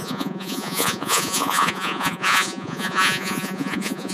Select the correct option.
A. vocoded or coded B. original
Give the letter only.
A